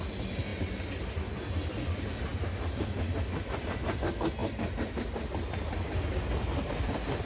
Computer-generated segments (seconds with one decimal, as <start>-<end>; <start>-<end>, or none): none